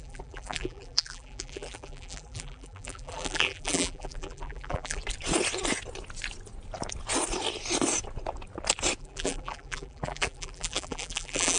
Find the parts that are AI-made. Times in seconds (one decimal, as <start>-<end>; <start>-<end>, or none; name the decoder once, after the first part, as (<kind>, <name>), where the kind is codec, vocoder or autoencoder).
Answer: 0.0-5.0 (vocoder, BigVGAN v2); 9.0-11.6